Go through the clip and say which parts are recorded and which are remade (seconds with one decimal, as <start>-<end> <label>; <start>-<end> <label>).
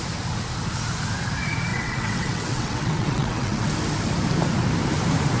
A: 0.0-1.7 recorded; 1.7-3.7 remade; 3.7-5.4 recorded